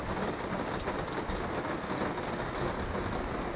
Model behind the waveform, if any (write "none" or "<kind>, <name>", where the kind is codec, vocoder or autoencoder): none